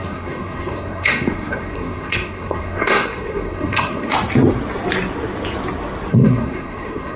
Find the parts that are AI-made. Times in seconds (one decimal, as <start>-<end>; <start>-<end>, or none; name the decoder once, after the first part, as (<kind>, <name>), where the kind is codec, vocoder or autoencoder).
0.0-4.1 (codec, SNAC); 6.1-7.2